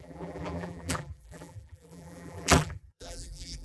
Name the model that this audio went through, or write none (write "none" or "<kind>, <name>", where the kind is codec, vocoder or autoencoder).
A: vocoder, BigVGAN v2